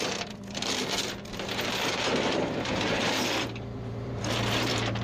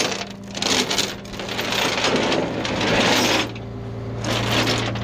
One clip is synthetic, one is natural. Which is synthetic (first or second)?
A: first